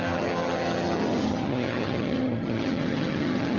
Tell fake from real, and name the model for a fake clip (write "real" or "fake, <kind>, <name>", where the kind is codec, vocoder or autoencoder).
fake, vocoder, HiFi-GAN